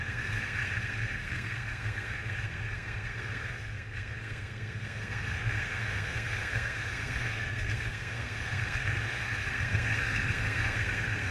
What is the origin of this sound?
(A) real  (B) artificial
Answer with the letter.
B